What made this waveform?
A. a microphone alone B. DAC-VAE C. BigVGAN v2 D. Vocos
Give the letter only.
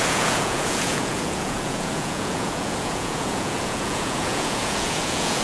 D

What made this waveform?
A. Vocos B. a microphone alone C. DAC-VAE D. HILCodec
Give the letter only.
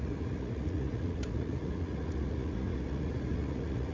A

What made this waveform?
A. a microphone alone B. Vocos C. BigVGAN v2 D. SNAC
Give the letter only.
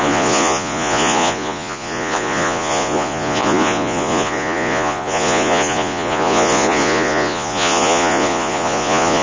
B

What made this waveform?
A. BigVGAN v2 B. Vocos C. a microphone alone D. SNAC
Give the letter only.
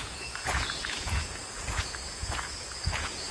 B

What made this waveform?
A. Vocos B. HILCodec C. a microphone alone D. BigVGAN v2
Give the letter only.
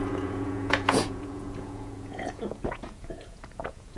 A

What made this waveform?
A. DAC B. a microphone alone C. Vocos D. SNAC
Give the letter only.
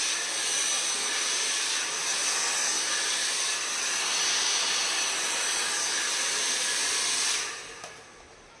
B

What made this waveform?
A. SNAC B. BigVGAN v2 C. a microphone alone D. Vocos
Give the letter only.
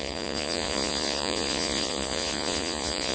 D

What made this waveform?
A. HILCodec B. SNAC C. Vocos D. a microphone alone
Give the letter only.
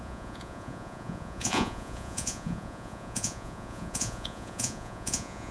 C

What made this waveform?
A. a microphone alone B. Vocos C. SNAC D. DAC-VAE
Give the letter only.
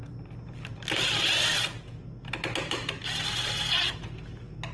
A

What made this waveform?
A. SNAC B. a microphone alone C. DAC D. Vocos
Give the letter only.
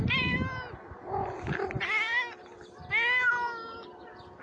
B